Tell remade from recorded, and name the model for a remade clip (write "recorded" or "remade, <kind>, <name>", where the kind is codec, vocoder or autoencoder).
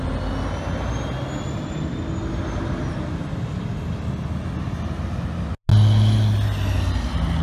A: recorded